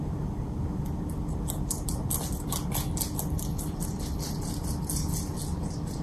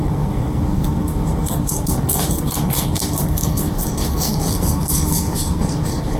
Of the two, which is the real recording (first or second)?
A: first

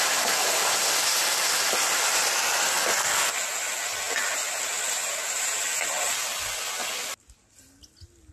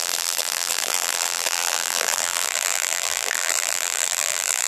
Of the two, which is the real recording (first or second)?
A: first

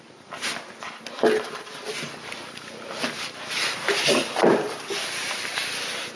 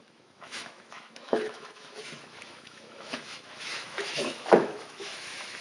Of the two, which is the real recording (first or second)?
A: first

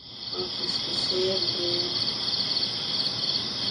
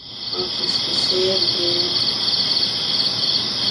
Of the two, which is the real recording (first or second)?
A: second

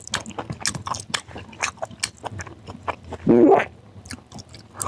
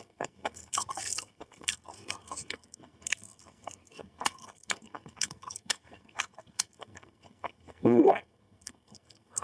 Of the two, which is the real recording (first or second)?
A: first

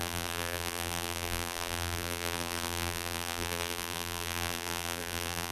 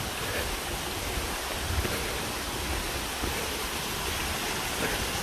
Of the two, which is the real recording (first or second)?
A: second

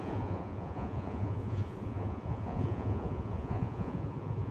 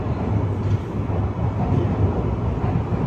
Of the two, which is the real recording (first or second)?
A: second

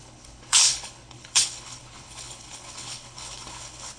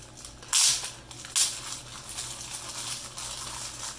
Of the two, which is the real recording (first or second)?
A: second